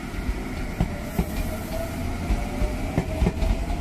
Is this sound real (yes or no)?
yes